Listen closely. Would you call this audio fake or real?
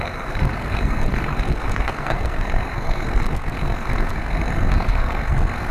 fake